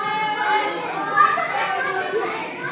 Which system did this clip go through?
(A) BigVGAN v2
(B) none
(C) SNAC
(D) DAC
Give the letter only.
B